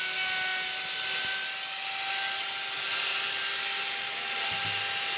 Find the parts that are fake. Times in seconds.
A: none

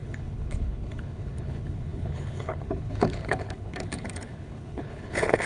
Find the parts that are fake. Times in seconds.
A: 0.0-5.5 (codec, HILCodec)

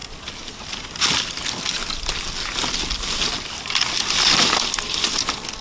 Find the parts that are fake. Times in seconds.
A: none